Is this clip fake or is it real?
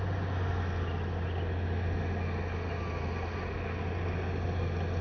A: real